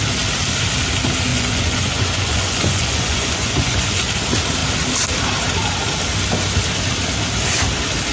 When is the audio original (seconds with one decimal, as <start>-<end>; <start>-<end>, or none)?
0.0-1.3; 4.1-8.1